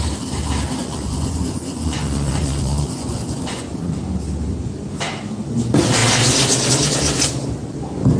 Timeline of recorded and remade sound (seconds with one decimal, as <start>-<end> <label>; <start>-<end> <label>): 0.0-0.8 recorded; 0.8-4.0 remade; 4.0-8.2 recorded